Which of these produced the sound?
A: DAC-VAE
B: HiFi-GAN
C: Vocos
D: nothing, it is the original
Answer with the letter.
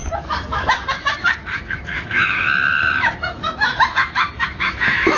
A